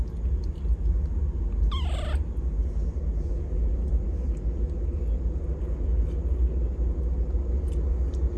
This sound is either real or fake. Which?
real